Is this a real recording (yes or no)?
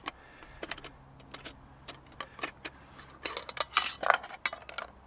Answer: yes